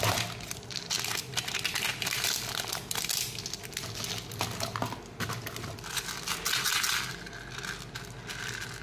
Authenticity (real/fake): real